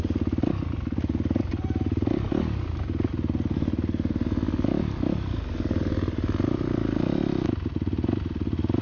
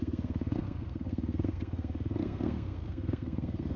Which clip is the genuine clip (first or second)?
first